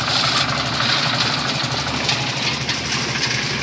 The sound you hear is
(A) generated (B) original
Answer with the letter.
B